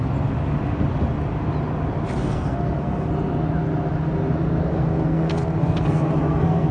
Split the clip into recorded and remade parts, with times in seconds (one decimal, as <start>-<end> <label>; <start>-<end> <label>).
0.0-2.2 recorded; 2.2-3.1 remade; 3.1-4.7 recorded; 4.7-6.7 remade